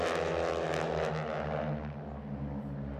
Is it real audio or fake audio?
real